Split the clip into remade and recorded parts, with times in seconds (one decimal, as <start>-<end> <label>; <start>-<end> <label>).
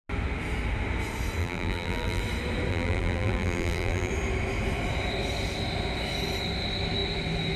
0.0-1.4 recorded; 1.4-2.2 remade; 2.2-2.7 recorded; 2.7-4.1 remade; 4.1-7.6 recorded